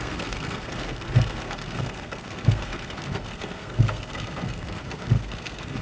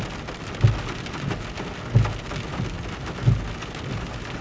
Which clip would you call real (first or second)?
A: second